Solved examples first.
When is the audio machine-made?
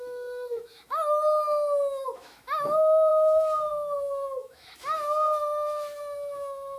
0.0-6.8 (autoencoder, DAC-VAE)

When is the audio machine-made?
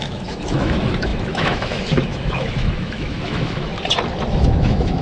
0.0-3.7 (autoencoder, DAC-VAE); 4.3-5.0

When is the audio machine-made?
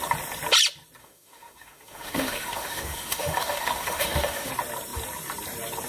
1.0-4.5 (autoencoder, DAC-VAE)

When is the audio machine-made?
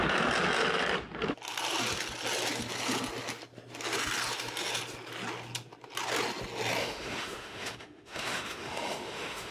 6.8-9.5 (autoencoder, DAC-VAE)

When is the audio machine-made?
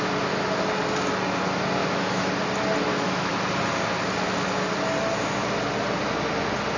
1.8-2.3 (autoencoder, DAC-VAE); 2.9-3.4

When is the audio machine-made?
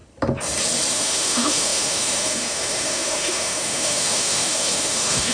0.9-5.3 (autoencoder, DAC-VAE)